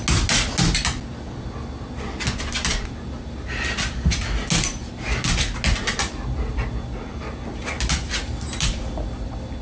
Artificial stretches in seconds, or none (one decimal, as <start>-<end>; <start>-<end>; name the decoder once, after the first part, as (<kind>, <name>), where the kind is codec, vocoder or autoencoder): none